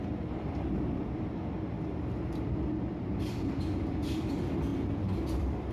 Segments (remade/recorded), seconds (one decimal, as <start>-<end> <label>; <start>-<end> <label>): 0.0-5.7 recorded